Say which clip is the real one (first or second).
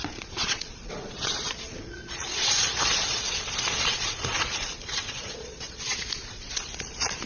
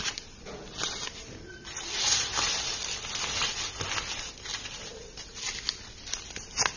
second